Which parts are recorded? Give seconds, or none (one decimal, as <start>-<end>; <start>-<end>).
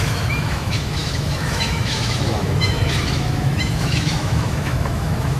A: none